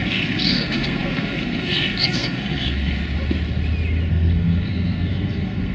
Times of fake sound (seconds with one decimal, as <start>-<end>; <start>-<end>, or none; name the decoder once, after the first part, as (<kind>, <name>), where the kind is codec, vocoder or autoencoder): 0.0-3.0 (codec, SNAC); 4.1-5.7